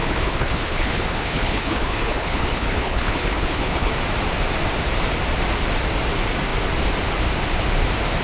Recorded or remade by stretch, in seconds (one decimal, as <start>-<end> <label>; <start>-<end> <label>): 0.0-3.9 remade; 3.9-8.2 recorded